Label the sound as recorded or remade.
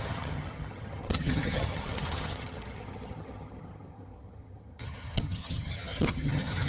remade